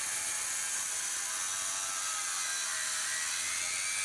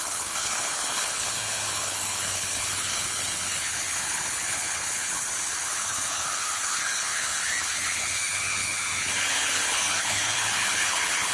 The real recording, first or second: first